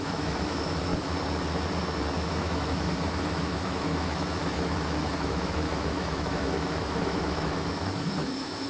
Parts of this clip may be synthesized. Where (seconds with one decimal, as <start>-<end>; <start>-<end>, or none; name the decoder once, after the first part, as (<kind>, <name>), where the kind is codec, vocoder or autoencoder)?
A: 0.0-0.9 (autoencoder, DAC-VAE); 2.2-8.7